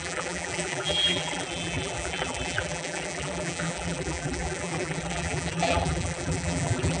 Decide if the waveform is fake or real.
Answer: fake